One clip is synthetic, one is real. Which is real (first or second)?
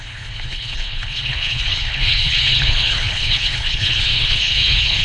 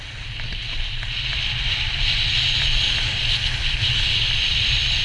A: second